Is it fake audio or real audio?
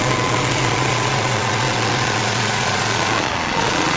fake